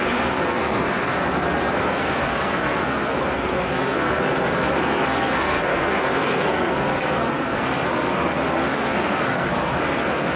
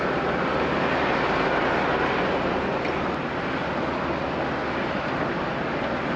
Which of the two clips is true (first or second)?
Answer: second